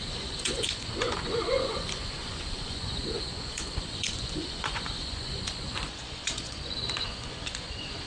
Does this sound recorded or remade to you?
remade